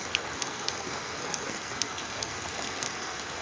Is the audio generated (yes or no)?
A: yes